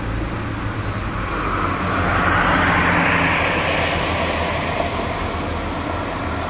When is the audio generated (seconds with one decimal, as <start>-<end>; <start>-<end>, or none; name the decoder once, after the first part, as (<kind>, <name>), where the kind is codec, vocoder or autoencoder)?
2.1-2.8 (vocoder, BigVGAN v2)